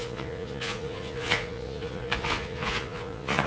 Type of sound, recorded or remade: remade